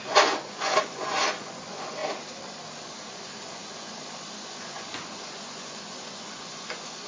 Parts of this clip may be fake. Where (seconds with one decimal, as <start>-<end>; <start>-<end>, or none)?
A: 0.0-2.0; 2.8-7.1

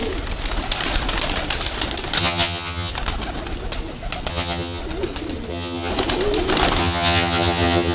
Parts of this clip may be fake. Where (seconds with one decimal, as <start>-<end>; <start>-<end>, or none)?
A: 2.2-2.9; 4.3-4.8; 5.5-5.9; 6.8-7.9